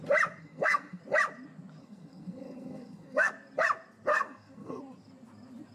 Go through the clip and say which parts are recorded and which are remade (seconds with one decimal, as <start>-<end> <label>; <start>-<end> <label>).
0.0-0.4 recorded; 0.4-1.0 remade; 1.0-1.8 recorded; 1.8-3.3 remade; 3.3-4.1 recorded; 4.1-4.8 remade; 4.8-5.7 recorded